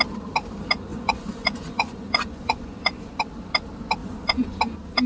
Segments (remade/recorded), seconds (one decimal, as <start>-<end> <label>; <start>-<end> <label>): 0.0-0.9 recorded; 0.9-3.2 remade; 3.2-4.0 recorded; 4.0-4.6 remade; 4.6-5.1 recorded